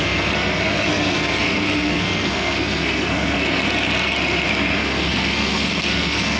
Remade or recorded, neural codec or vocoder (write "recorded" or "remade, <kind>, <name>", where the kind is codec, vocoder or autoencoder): remade, codec, SNAC